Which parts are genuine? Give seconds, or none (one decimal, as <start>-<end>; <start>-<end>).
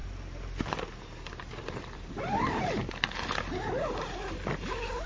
0.0-1.6; 2.8-3.4